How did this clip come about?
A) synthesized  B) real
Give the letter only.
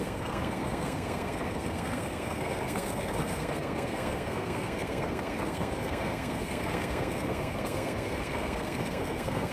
A